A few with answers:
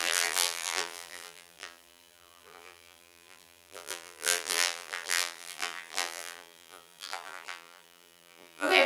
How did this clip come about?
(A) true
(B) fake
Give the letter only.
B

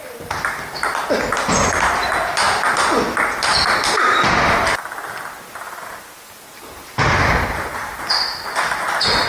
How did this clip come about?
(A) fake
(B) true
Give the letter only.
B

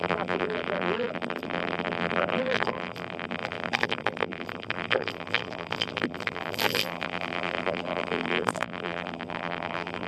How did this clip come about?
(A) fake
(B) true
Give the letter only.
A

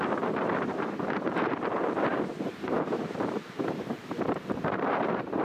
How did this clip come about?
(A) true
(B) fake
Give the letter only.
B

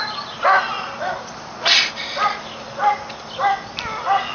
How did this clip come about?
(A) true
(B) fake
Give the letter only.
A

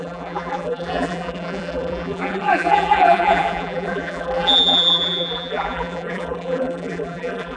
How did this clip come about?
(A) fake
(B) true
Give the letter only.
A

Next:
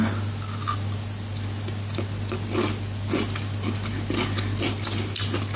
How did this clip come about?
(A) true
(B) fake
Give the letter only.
A